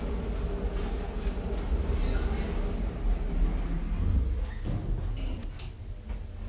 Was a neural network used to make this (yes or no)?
no